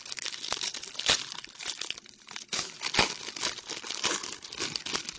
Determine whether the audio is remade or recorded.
recorded